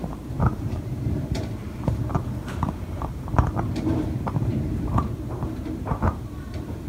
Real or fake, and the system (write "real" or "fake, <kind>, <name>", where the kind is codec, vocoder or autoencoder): fake, vocoder, BigVGAN v2